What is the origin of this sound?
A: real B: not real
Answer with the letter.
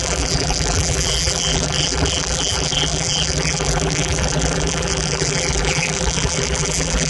B